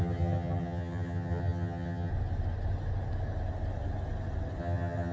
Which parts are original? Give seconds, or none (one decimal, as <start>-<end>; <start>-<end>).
2.1-4.6